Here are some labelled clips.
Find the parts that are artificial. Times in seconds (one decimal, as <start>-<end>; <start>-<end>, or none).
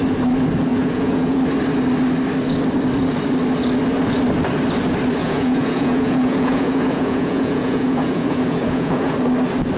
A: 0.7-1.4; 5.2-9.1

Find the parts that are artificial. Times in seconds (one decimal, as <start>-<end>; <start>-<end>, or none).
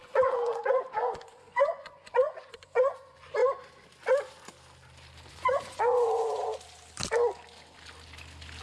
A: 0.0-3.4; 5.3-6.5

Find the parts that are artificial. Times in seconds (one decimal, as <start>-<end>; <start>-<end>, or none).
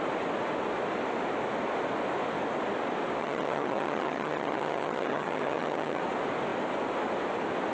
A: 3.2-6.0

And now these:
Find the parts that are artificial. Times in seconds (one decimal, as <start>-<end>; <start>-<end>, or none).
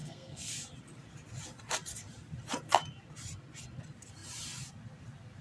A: 0.0-0.5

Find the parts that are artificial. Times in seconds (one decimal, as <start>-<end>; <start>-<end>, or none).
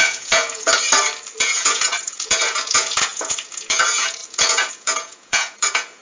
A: 0.0-0.7; 1.4-6.0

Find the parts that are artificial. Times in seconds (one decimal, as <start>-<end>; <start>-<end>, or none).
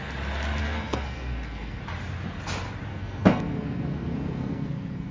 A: 0.6-1.8; 2.9-5.1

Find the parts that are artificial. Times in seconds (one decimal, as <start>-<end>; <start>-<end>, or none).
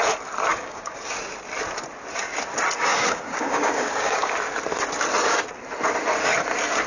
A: 0.5-1.1; 2.9-4.3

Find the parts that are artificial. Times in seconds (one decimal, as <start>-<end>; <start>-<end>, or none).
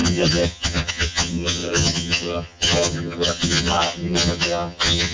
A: 0.0-5.1